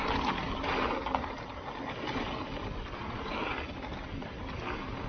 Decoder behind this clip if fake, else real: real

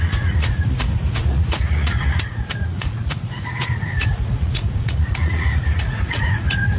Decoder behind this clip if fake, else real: fake, vocoder, Vocos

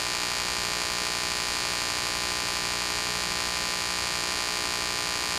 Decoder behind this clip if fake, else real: real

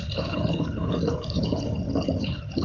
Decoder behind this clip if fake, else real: fake, codec, HILCodec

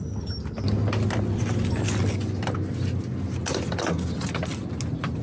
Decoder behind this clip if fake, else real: real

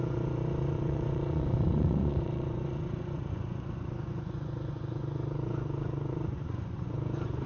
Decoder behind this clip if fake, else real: fake, vocoder, Vocos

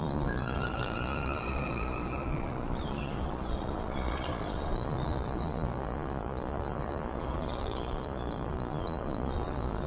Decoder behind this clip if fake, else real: fake, vocoder, Vocos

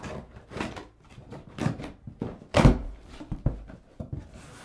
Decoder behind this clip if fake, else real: real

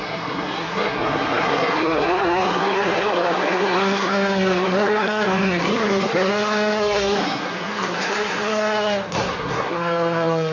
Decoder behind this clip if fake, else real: fake, codec, SNAC